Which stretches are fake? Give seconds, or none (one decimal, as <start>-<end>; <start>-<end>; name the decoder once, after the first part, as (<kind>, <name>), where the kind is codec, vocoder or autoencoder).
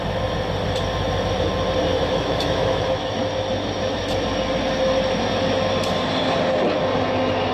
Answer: 1.9-3.3 (autoencoder, DAC-VAE)